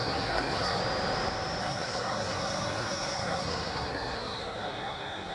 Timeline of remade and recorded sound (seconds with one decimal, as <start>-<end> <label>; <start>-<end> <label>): 0.0-0.8 remade; 0.8-1.6 recorded; 1.6-5.3 remade